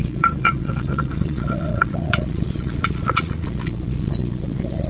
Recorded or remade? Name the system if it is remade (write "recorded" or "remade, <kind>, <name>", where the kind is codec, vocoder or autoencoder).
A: remade, vocoder, Vocos